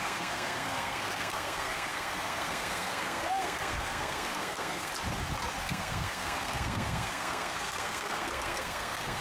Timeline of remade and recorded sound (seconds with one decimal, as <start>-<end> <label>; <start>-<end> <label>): 0.0-4.9 remade; 4.9-5.6 recorded; 5.6-9.2 remade